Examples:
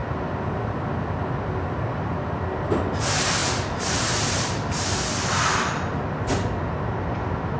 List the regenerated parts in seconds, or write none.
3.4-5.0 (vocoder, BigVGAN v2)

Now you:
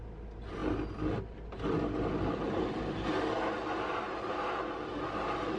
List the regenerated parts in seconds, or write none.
none

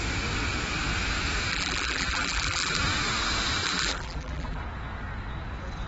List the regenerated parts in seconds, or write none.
1.5-2.8 (vocoder, BigVGAN v2); 3.6-4.6

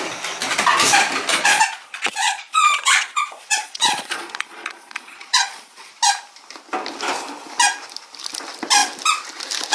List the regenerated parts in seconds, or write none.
1.3-5.9 (vocoder, Vocos)

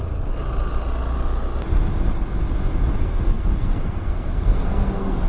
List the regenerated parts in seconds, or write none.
3.0-5.3 (codec, SNAC)

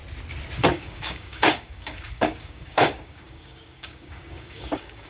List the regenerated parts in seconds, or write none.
0.7-5.1 (codec, DAC)